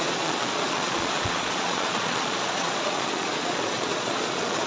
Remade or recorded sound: remade